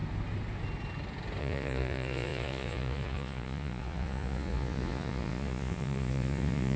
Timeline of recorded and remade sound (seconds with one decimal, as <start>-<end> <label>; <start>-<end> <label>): 0.0-1.4 recorded; 1.4-6.8 remade